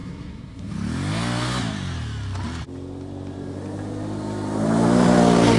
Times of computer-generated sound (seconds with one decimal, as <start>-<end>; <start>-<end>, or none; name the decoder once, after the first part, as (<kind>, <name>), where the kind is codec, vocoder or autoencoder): 0.0-0.7 (codec, SNAC)